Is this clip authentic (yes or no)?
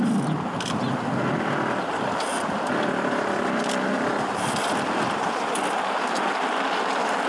yes